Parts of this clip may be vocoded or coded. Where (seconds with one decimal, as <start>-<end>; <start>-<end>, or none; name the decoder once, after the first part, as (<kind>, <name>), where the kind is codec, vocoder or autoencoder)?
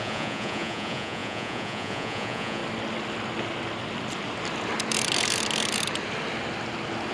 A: 0.0-2.6 (vocoder, Vocos)